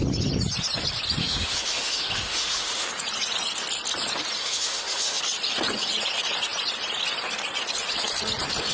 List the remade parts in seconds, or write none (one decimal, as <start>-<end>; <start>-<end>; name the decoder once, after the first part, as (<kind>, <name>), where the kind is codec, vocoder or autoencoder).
1.2-2.9 (autoencoder, DAC-VAE); 4.4-5.2